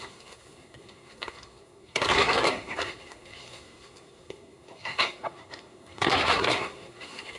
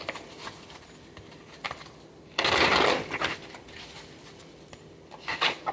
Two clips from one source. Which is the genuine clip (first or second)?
second